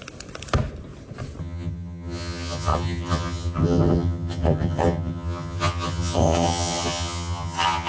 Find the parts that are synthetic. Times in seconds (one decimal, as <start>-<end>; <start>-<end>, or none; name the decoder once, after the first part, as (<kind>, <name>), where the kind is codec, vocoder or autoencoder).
1.4-7.9 (vocoder, HiFi-GAN)